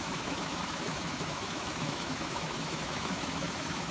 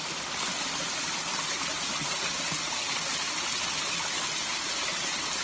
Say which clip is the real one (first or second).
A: second